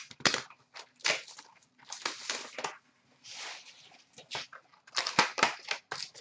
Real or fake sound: real